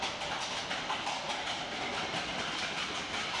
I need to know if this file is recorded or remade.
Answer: recorded